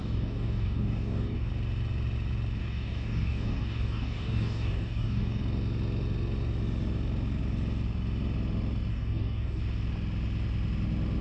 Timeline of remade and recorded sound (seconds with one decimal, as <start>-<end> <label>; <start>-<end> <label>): 0.0-1.5 remade; 1.5-2.6 recorded; 2.6-5.4 remade; 5.4-8.9 recorded; 8.9-9.6 remade; 9.6-11.2 recorded